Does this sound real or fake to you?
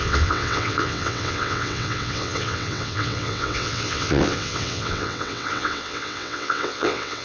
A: fake